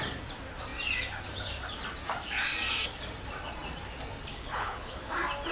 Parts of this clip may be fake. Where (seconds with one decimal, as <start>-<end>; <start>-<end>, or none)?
4.3-5.1